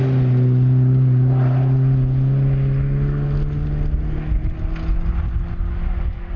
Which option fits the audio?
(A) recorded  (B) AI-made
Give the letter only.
A